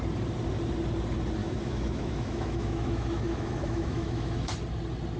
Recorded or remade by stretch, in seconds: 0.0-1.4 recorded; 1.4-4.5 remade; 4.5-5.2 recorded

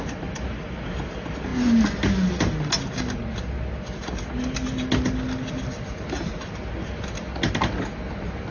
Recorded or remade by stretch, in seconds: 0.0-8.5 recorded